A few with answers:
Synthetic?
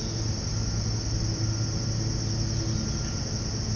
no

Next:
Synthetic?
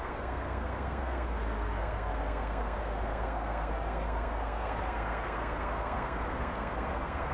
yes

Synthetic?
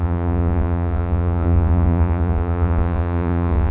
yes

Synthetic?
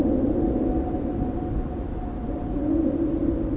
no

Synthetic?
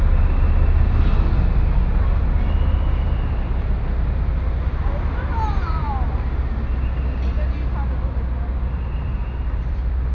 no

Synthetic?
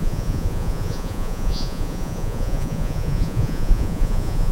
yes